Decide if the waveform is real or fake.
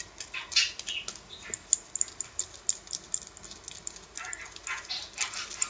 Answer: real